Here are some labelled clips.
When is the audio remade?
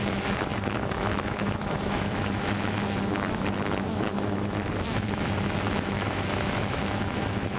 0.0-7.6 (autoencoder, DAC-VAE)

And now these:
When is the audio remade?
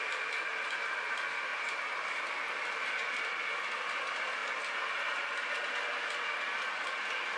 none